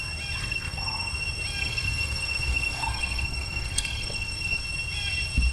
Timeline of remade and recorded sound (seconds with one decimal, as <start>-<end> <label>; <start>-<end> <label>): 0.0-0.4 recorded; 0.4-1.1 remade; 1.1-1.6 recorded; 1.6-4.6 remade; 4.6-5.5 recorded